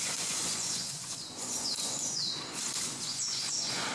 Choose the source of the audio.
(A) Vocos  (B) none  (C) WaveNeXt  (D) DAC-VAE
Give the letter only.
A